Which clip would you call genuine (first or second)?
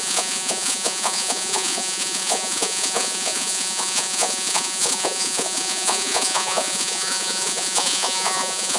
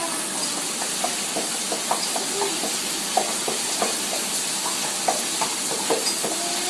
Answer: second